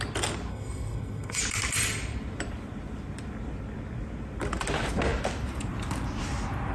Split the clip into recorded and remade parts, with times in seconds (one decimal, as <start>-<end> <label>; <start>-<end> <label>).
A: 0.0-0.5 recorded; 0.5-1.4 remade; 1.4-6.7 recorded